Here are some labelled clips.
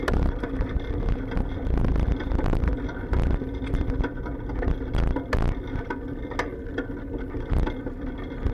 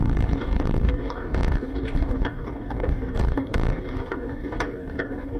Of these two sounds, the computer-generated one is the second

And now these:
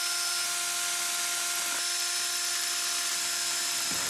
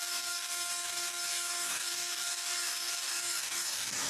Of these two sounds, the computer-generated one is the second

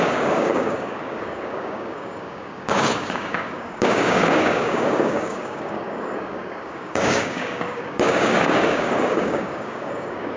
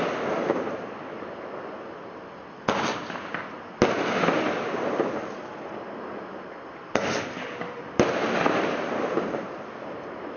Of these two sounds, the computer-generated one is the first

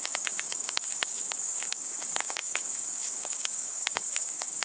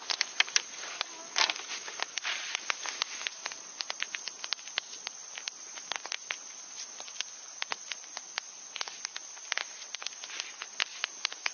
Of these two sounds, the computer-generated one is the first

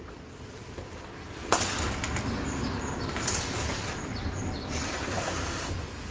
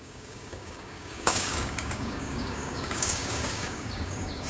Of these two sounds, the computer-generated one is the second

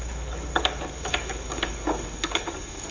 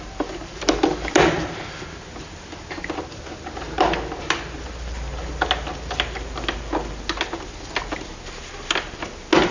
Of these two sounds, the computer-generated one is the first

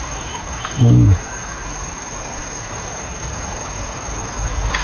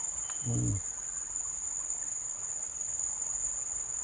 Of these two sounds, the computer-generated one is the first